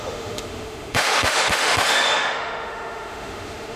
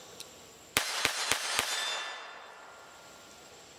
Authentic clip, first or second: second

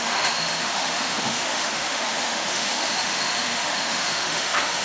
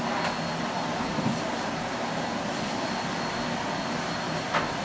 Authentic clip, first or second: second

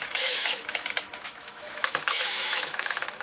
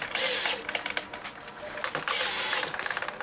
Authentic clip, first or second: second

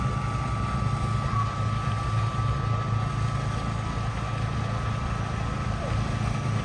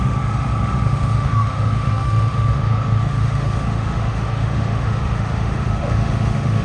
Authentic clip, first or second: first